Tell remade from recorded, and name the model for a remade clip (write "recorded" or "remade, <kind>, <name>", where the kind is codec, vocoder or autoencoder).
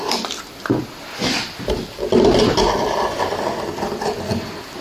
recorded